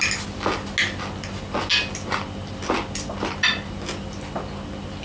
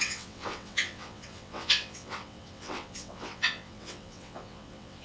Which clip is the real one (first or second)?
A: first